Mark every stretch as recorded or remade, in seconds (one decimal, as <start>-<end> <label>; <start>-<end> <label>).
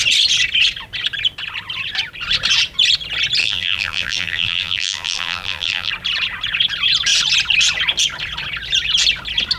0.0-3.4 recorded; 3.4-5.9 remade; 5.9-9.6 recorded